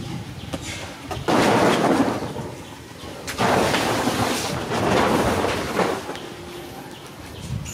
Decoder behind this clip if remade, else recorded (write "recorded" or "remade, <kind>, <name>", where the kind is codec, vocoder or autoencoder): recorded